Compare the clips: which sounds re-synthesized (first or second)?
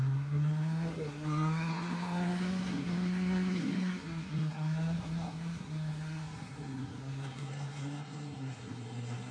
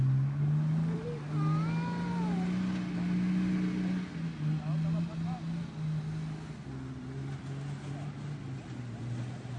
first